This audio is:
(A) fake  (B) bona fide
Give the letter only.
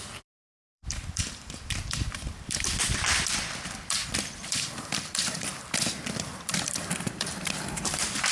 A